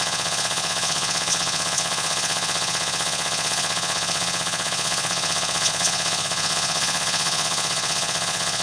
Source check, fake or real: fake